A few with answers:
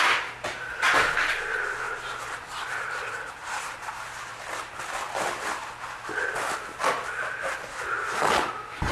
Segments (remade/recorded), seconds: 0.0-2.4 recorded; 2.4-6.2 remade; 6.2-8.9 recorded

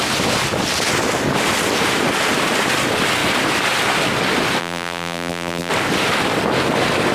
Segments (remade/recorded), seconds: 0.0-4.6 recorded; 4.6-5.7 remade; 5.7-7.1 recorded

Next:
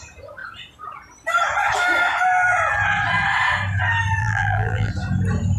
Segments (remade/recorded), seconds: 0.0-4.2 recorded; 4.2-4.9 remade; 4.9-5.6 recorded